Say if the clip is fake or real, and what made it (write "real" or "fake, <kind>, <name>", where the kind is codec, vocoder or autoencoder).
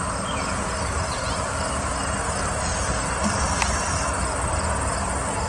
real